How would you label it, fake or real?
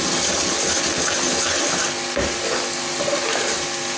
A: real